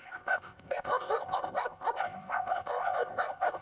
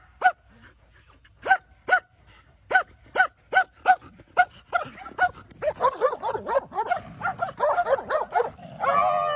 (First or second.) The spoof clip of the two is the first